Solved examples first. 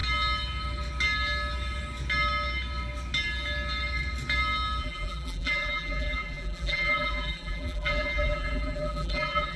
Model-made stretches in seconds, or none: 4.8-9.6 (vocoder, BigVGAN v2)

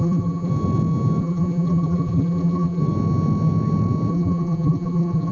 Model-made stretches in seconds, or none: 0.0-0.5 (vocoder, BigVGAN v2); 1.2-2.8; 4.1-5.3

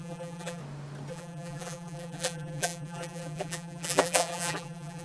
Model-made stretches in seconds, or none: 0.0-0.6 (vocoder, BigVGAN v2); 1.1-5.0

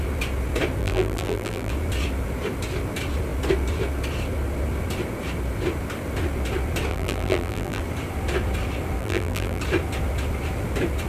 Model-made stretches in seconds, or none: 0.8-1.7 (vocoder, BigVGAN v2); 6.9-7.8; 9.0-9.6

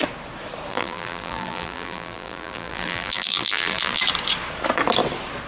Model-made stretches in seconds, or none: 0.7-4.0 (vocoder, BigVGAN v2)

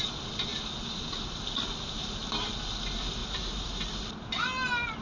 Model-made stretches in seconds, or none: 3.2-4.3 (vocoder, BigVGAN v2)

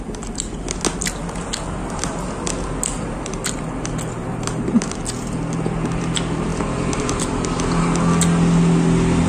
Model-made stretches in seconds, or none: 4.2-5.0 (vocoder, BigVGAN v2); 6.5-7.2